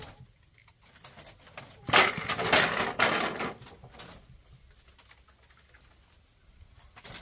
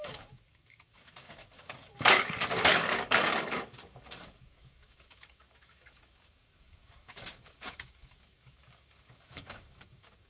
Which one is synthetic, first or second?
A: second